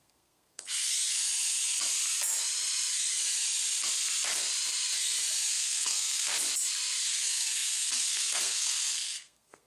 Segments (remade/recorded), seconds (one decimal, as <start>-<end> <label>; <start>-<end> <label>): 0.0-0.9 remade; 0.9-5.5 recorded; 5.5-6.3 remade; 6.3-7.1 recorded; 7.1-9.7 remade